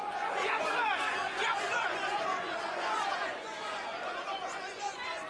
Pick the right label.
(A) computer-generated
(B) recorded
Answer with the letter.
A